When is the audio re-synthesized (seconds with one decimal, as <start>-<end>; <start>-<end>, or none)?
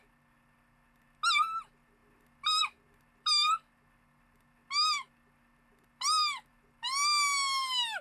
none